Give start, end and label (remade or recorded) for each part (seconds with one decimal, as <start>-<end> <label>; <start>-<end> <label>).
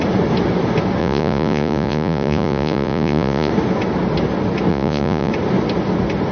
0.0-1.0 recorded; 1.0-3.5 remade; 3.5-4.7 recorded; 4.7-5.3 remade; 5.3-6.3 recorded